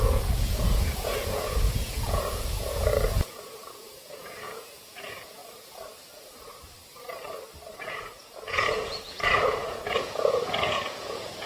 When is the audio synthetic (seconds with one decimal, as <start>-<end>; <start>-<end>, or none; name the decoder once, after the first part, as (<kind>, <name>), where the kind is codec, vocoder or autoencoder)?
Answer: 0.0-5.4 (vocoder, Vocos); 7.9-11.5